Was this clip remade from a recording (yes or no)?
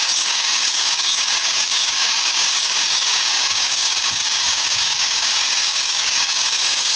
yes